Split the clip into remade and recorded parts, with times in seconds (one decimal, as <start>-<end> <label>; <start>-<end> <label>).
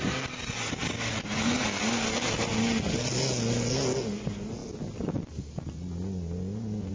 0.0-6.9 recorded